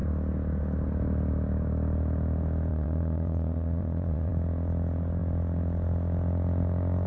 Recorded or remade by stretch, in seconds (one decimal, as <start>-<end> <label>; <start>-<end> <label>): 0.0-2.7 recorded; 2.7-4.3 remade; 4.3-7.1 recorded